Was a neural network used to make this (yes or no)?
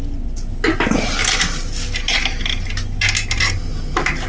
no